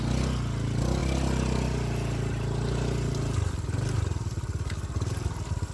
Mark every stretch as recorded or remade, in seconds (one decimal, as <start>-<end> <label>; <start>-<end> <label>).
0.0-5.7 recorded